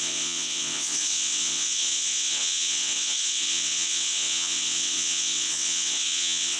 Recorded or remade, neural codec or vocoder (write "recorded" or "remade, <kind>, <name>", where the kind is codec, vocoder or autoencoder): remade, vocoder, WaveNeXt